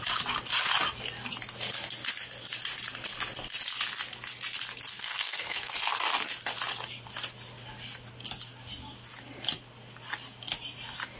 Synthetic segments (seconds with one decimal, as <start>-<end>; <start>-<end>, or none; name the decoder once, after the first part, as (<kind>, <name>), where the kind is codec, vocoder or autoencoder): 4.9-5.7 (codec, SNAC)